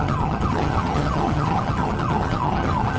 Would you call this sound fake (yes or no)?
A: yes